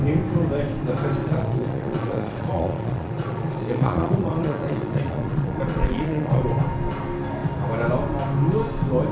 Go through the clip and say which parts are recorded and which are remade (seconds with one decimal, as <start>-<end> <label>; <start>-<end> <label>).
0.0-1.2 recorded; 1.2-6.4 remade; 6.4-9.1 recorded